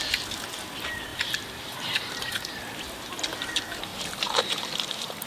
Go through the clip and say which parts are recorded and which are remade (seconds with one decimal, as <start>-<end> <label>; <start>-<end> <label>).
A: 0.0-1.1 recorded; 1.1-2.5 remade; 2.5-3.9 recorded; 3.9-5.3 remade